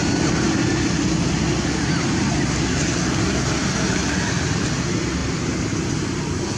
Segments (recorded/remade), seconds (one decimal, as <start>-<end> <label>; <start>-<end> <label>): 0.0-0.6 remade; 0.6-2.3 recorded; 2.3-3.0 remade; 3.0-3.6 recorded; 3.6-4.6 remade; 4.6-5.2 recorded; 5.2-6.6 remade